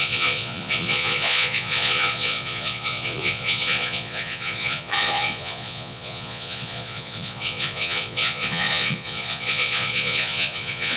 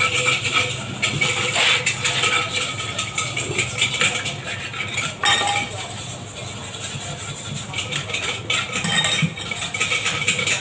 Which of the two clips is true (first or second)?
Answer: second